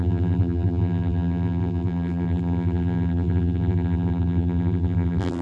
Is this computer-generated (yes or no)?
yes